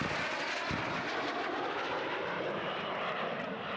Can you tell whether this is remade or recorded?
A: recorded